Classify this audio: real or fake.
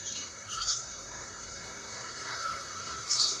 fake